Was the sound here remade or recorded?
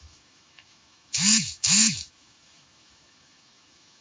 remade